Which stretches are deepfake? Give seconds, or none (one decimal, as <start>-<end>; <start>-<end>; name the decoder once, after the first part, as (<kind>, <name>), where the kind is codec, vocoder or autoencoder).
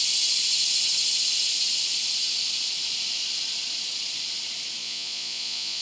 4.8-5.8 (vocoder, Vocos)